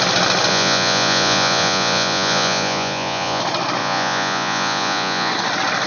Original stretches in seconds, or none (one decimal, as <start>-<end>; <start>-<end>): 0.0-0.5; 3.4-3.8; 5.3-5.9